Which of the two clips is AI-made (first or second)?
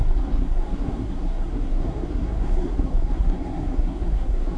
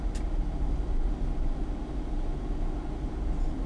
first